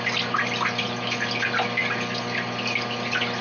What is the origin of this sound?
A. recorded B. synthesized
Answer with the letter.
A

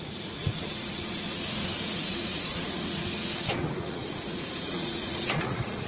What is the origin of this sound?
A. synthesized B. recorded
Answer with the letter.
A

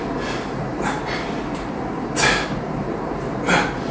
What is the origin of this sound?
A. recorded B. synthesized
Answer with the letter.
A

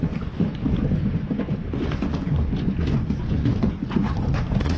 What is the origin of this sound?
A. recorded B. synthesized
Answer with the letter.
B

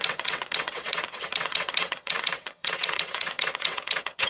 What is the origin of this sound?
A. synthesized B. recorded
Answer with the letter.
A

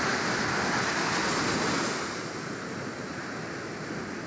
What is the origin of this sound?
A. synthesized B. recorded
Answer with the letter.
B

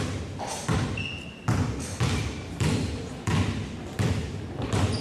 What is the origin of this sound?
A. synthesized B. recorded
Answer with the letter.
B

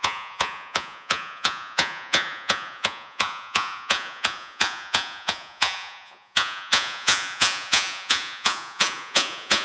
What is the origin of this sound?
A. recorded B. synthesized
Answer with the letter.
B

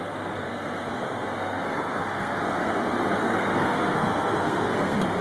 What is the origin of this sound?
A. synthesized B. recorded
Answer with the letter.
A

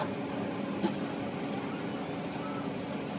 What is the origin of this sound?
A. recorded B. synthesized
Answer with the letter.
A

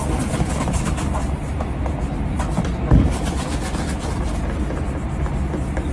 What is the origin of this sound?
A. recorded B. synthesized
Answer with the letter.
A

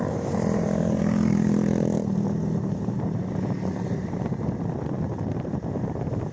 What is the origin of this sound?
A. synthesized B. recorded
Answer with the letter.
A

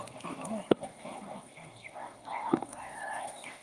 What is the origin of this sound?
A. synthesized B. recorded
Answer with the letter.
A